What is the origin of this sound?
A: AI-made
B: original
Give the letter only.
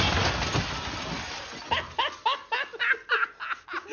B